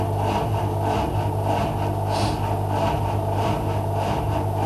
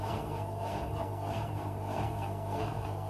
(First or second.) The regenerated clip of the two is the second